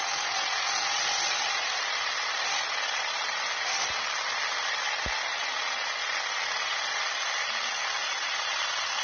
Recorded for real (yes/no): yes